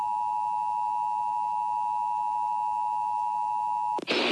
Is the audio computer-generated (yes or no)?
no